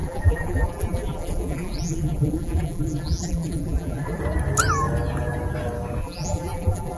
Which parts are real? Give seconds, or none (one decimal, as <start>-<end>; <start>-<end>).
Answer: 4.2-6.0